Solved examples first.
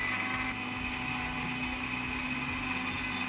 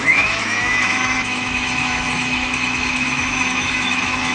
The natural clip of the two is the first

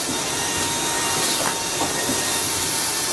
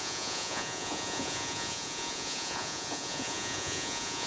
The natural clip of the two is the first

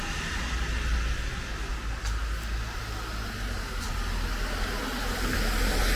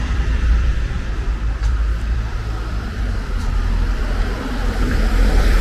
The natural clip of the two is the first